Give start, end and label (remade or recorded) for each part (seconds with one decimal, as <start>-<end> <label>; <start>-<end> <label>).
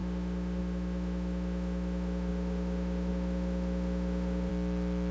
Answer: 0.0-4.5 remade; 4.5-5.1 recorded